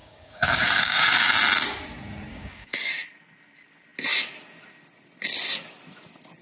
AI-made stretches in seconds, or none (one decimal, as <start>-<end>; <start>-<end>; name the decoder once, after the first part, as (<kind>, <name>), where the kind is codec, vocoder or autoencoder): 0.0-1.3 (codec, DAC); 2.3-2.9